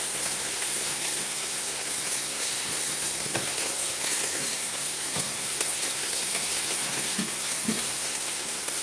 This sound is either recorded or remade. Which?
remade